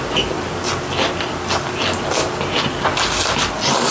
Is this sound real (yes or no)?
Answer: yes